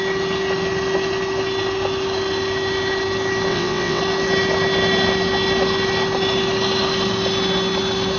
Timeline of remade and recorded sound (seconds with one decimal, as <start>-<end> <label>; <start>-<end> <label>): 0.0-3.5 recorded; 3.5-4.0 remade; 4.0-8.2 recorded